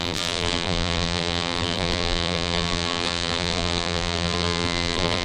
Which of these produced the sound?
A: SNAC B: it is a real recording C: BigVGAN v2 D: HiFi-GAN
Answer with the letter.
C